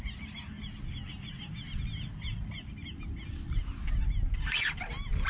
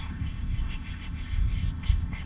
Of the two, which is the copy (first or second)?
second